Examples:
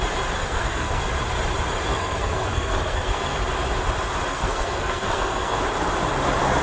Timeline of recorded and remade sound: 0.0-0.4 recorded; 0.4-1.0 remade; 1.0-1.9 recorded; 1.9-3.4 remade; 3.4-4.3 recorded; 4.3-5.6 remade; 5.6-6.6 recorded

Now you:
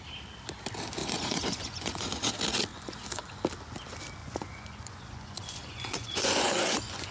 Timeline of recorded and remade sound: 0.0-1.0 recorded; 1.0-2.3 remade; 2.3-2.7 recorded; 2.7-3.4 remade; 3.4-4.2 recorded; 4.2-7.1 remade

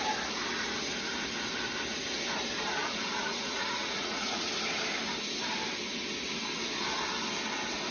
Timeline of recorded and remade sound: 0.0-2.8 recorded; 2.8-4.5 remade; 4.5-7.9 recorded

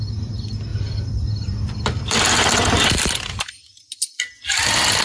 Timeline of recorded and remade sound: 0.0-0.7 recorded; 0.7-3.6 remade; 3.6-5.0 recorded